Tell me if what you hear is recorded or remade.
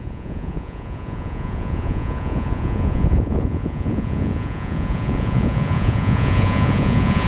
remade